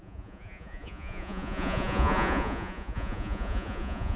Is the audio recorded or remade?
remade